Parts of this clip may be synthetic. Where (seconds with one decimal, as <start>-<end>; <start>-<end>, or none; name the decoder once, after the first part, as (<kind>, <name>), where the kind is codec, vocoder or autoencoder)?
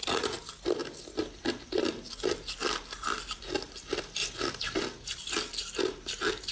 none